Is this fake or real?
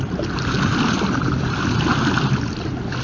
real